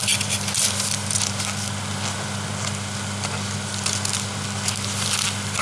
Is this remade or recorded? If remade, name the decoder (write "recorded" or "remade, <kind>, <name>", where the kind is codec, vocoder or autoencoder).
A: recorded